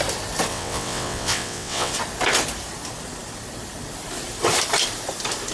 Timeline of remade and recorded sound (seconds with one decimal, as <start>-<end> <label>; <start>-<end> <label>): 0.0-0.5 recorded; 0.5-1.9 remade; 1.9-5.5 recorded

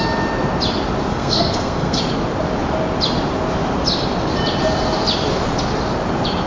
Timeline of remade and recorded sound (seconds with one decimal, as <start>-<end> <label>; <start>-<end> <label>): 0.0-1.1 recorded; 1.1-2.0 remade; 2.0-6.5 recorded

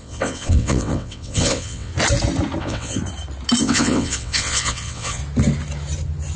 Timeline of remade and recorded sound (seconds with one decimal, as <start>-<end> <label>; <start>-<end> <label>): 0.0-1.9 remade; 1.9-2.6 recorded; 2.6-3.0 remade; 3.0-3.6 recorded; 3.6-5.2 remade; 5.2-6.4 recorded

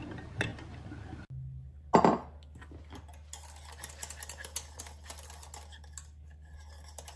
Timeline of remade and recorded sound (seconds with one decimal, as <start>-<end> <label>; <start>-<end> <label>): 0.0-7.2 recorded

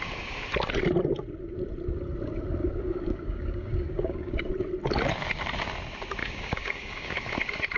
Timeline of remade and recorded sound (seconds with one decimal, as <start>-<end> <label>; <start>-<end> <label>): 0.0-2.6 recorded; 2.6-4.5 remade; 4.5-6.2 recorded; 6.2-7.3 remade; 7.3-7.8 recorded

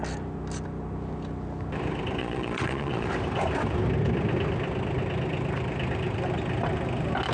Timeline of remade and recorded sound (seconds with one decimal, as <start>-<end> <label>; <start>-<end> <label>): 0.0-2.2 recorded; 2.2-3.1 remade; 3.1-7.3 recorded

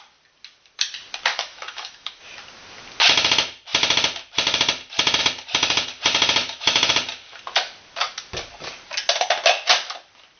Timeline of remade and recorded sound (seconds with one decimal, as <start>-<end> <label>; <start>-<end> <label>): 0.0-1.3 recorded; 1.3-2.2 remade; 2.2-6.4 recorded; 6.4-6.9 remade; 6.9-10.4 recorded

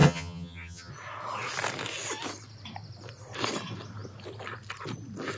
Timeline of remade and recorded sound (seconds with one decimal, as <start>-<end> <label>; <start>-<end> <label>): 0.0-0.9 remade; 0.9-5.4 recorded